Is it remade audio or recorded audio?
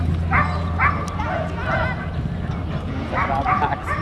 recorded